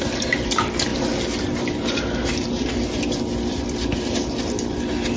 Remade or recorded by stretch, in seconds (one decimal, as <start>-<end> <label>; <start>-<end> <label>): 0.0-5.2 recorded